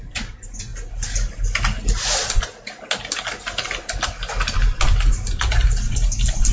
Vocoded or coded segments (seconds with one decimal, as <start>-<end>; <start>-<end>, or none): none